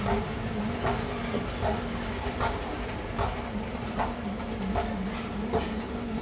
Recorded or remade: recorded